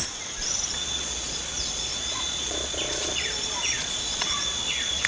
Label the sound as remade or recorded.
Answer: remade